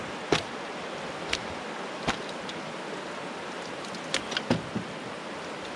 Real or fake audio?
real